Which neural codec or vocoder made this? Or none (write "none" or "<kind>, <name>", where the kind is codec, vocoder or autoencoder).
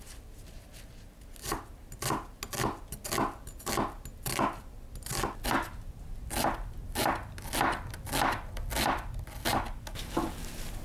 none